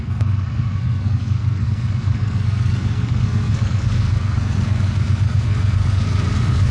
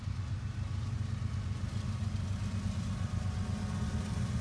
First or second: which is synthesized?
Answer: first